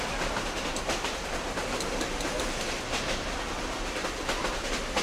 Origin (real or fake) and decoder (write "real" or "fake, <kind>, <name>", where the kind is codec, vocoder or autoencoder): real